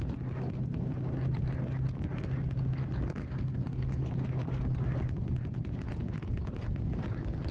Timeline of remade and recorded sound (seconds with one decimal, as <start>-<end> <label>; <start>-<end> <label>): 0.0-3.2 recorded; 3.2-4.1 remade; 4.1-7.5 recorded